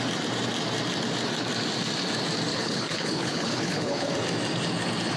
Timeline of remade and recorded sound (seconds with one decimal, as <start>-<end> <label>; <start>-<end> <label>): 0.0-2.5 recorded; 2.5-4.1 remade; 4.1-5.2 recorded